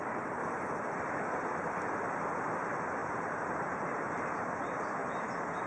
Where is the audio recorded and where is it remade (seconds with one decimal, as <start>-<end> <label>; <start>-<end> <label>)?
0.0-3.0 recorded; 3.0-4.5 remade; 4.5-5.0 recorded; 5.0-5.7 remade